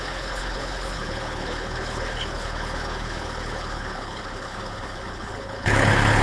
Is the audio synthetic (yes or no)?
yes